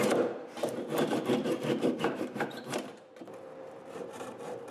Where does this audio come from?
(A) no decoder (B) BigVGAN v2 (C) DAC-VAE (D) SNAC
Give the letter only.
B